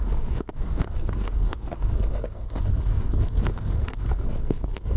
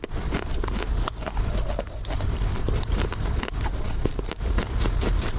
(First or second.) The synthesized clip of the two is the first